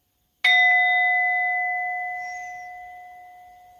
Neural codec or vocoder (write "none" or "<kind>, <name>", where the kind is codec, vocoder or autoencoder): none